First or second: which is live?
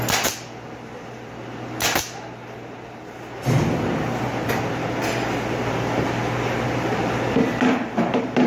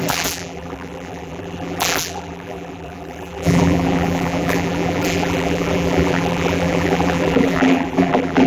first